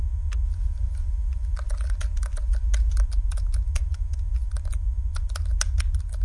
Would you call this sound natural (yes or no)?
yes